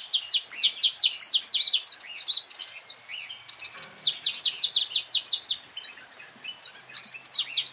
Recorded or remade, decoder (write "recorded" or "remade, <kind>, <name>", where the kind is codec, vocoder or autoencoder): recorded